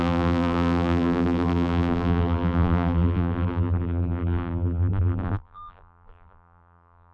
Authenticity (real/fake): fake